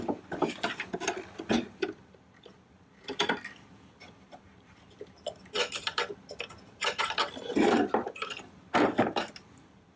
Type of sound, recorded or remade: remade